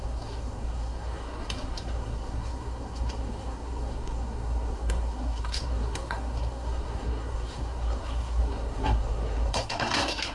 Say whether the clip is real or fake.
fake